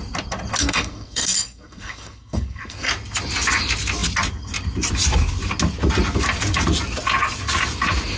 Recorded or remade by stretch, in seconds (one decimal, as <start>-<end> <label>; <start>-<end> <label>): 0.0-0.6 recorded; 0.6-2.9 remade; 2.9-8.2 recorded